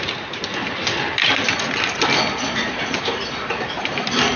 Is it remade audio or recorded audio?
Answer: recorded